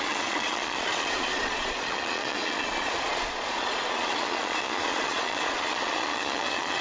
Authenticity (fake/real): fake